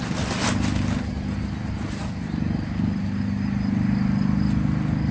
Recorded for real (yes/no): yes